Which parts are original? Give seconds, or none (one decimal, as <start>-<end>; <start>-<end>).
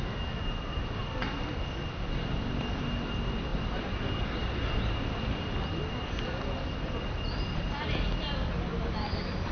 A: 1.0-2.4